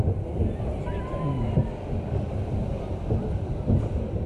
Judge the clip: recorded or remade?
recorded